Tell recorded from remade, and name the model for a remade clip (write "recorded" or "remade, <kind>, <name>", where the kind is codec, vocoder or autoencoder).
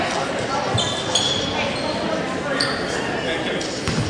recorded